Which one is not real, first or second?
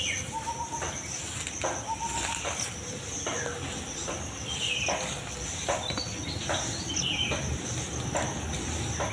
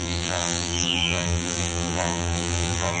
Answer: second